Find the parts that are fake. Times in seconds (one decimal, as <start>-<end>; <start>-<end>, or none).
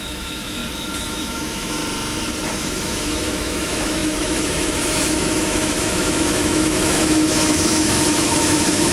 0.0-0.6; 1.1-1.8; 2.6-8.9